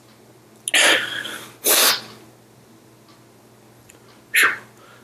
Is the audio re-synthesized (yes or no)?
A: no